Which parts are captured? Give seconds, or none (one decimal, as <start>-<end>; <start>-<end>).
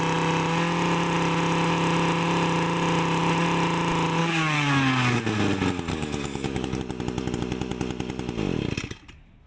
0.0-4.2; 5.2-5.9; 6.8-9.5